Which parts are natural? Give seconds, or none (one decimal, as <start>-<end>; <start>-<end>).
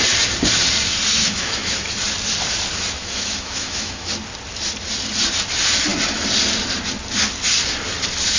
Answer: 0.0-1.1; 1.9-3.0; 4.1-8.4